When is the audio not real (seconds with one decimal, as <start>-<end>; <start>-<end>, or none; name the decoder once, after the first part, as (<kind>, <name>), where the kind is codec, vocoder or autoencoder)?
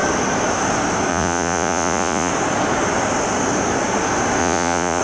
1.1-2.3 (vocoder, Vocos); 4.4-5.0